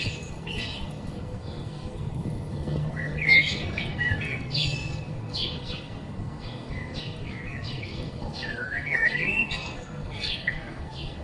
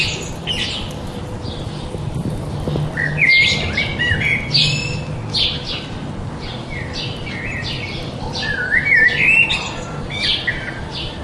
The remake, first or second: first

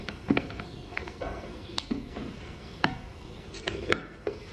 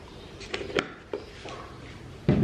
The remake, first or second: first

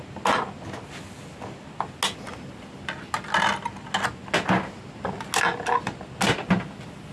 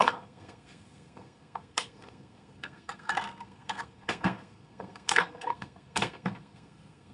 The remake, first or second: second